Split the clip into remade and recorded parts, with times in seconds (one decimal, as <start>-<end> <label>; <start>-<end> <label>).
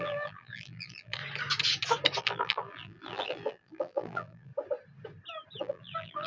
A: 0.0-1.2 remade; 1.2-2.2 recorded; 2.2-4.5 remade; 4.5-5.6 recorded; 5.6-6.3 remade